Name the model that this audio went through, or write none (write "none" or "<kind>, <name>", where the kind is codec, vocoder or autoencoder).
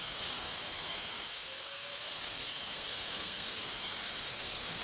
codec, SNAC